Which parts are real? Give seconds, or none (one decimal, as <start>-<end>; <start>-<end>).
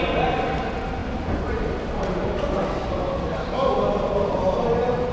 0.0-5.1